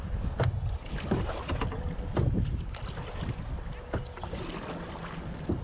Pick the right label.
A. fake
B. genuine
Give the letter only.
B